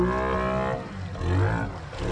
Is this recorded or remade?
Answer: recorded